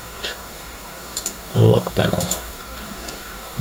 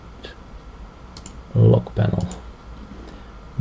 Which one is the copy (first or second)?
first